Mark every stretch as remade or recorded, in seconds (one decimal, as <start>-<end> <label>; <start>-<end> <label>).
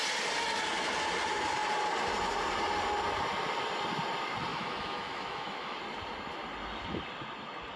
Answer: 0.0-4.5 recorded; 4.5-5.8 remade; 5.8-7.8 recorded